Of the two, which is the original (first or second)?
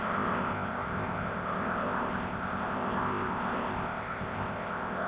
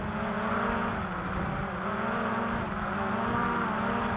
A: second